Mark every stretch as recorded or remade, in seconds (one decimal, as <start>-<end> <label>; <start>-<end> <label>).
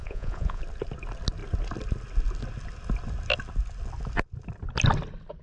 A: 0.0-0.6 remade; 0.6-5.4 recorded